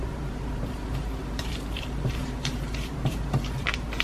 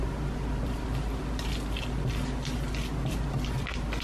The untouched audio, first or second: second